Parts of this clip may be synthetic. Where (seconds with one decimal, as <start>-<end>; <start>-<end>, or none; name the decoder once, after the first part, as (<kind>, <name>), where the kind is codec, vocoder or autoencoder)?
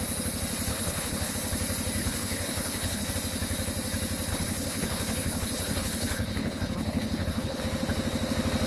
0.7-1.3 (codec, HILCodec); 2.0-3.1; 4.3-7.6